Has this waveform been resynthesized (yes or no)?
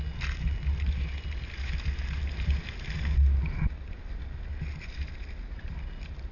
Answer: no